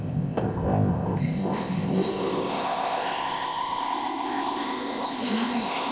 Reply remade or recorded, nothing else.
remade